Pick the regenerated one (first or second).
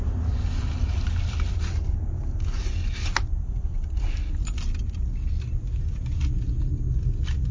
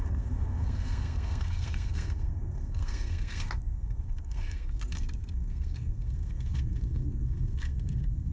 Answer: second